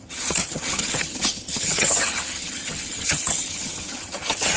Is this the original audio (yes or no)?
no